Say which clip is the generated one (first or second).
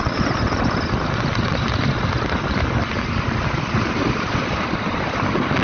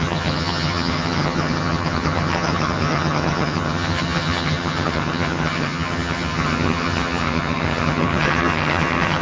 second